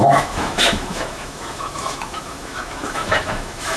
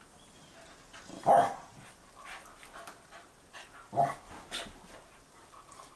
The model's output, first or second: first